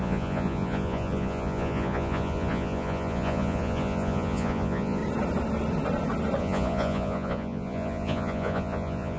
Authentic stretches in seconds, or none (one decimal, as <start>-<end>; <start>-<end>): 5.0-6.4